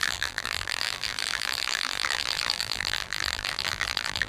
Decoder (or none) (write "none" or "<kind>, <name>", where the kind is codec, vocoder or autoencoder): vocoder, BigVGAN v2